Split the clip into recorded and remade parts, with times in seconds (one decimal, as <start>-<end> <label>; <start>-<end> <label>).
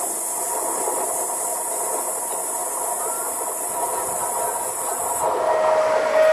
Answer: 0.0-1.5 recorded; 1.5-2.0 remade; 2.0-6.3 recorded